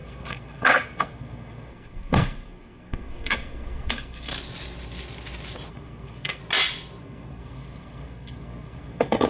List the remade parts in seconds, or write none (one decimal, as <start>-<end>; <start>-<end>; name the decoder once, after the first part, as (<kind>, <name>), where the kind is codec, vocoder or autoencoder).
0.0-4.3 (codec, SNAC); 5.7-6.4; 7.0-9.3